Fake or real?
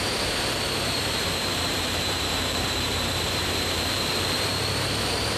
fake